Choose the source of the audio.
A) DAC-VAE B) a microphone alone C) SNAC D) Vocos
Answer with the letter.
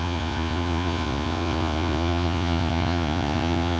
D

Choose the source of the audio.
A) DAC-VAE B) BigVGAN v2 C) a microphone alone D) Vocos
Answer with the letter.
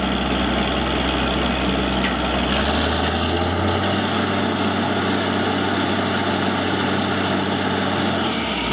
C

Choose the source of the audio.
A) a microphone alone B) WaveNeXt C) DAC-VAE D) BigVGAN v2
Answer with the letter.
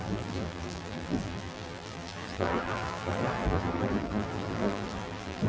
D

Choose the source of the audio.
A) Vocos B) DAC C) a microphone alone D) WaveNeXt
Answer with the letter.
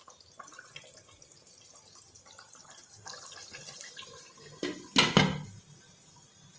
C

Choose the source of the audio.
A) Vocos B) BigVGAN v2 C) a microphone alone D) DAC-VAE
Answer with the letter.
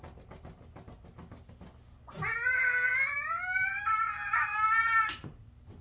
C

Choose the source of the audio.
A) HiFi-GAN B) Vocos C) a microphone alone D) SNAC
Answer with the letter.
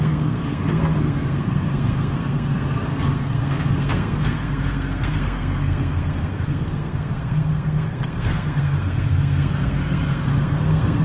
D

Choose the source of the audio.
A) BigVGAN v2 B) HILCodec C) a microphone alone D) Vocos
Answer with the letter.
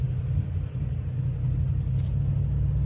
C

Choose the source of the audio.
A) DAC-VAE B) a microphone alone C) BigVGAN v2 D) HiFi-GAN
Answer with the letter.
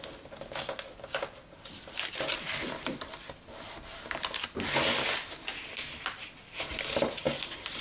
B